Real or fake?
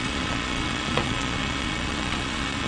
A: fake